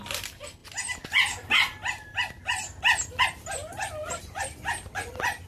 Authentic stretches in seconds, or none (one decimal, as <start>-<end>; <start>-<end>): 0.6-3.2